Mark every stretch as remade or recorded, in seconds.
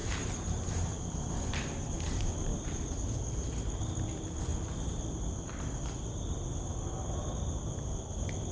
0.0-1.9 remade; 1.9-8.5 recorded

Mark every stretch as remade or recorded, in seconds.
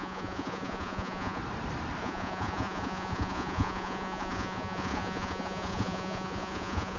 0.0-1.4 remade; 1.4-2.0 recorded; 2.0-7.0 remade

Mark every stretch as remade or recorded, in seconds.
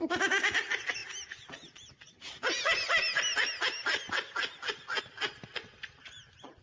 0.0-6.6 recorded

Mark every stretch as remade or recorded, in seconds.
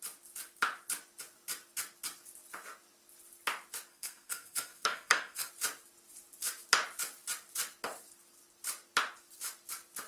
0.0-3.9 recorded; 3.9-5.5 remade; 5.5-10.1 recorded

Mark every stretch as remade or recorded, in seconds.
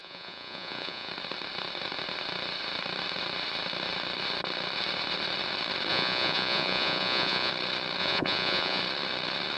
0.0-1.1 remade; 1.1-5.9 recorded; 5.9-7.5 remade; 7.5-8.0 recorded; 8.0-8.8 remade; 8.8-9.6 recorded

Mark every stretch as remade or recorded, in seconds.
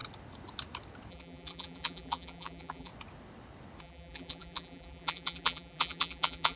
0.0-1.1 recorded; 1.1-2.9 remade; 2.9-3.8 recorded; 3.8-6.6 remade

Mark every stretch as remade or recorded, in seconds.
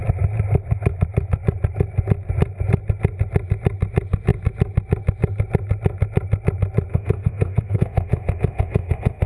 0.0-6.9 recorded; 6.9-9.3 remade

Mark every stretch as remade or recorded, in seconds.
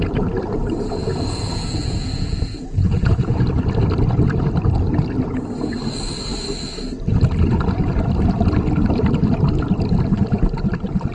0.0-1.1 recorded; 1.1-3.4 remade; 3.4-11.1 recorded